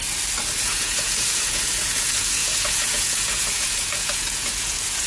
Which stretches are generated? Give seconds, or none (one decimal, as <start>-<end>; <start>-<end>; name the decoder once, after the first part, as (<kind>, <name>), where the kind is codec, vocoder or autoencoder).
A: 0.6-5.1 (vocoder, Vocos)